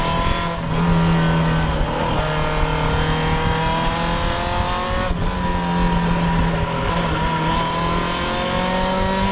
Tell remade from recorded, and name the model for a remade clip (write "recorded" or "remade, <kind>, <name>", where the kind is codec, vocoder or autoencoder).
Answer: recorded